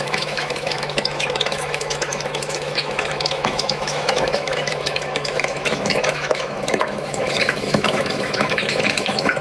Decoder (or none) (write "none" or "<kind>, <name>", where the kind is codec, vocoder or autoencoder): autoencoder, DAC-VAE